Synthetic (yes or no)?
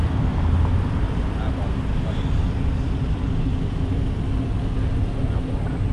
no